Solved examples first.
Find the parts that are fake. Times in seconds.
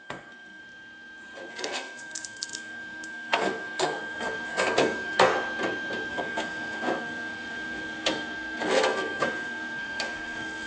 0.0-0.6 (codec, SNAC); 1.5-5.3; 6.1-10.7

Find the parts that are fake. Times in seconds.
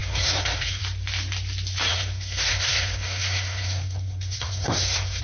0.0-0.8 (codec, SNAC); 1.9-5.2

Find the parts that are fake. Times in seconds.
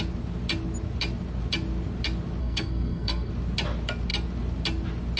2.4-3.3 (codec, SNAC)